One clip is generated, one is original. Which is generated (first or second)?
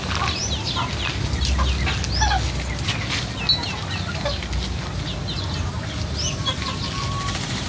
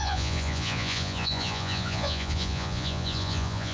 second